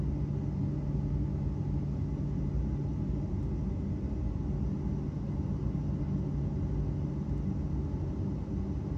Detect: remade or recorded recorded